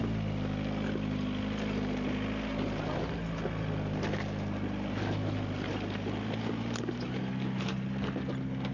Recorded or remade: recorded